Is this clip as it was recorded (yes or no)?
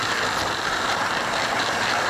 yes